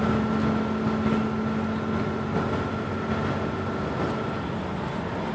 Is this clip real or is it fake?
real